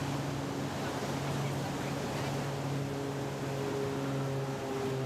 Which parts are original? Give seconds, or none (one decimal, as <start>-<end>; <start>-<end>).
0.0-5.1